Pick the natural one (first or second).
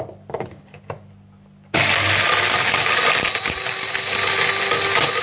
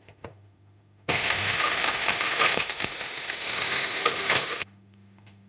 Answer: first